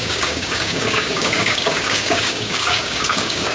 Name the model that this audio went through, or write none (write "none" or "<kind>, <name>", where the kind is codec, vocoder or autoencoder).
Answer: codec, DAC